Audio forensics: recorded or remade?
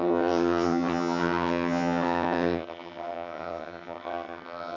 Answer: remade